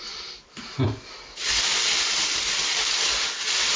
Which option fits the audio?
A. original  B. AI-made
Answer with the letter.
A